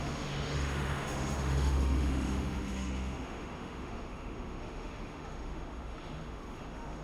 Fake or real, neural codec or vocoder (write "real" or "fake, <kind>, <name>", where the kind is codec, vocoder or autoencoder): fake, autoencoder, DAC-VAE